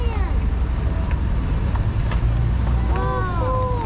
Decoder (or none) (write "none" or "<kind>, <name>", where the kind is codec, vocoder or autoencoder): none